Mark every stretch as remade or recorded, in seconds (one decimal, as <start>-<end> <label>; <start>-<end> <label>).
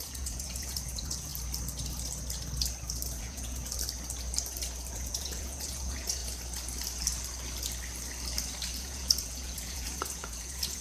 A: 0.0-1.3 remade; 1.3-3.2 recorded; 3.2-3.6 remade; 3.6-4.9 recorded; 4.9-6.2 remade; 6.2-8.8 recorded; 8.8-10.8 remade